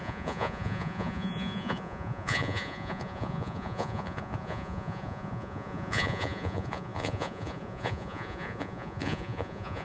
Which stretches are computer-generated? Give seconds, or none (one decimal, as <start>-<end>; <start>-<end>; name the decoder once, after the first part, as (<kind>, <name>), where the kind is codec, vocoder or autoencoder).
0.0-9.8 (vocoder, Vocos)